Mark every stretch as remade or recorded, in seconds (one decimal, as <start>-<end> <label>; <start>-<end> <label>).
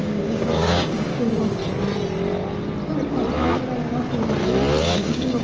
0.0-1.6 remade; 1.6-4.8 recorded; 4.8-5.4 remade